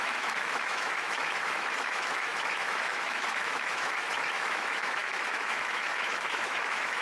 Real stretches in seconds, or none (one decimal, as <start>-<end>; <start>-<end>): none